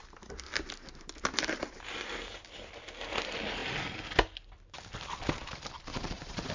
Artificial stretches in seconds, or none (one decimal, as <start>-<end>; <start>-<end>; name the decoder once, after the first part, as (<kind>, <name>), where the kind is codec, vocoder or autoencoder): 5.9-6.5 (vocoder, Vocos)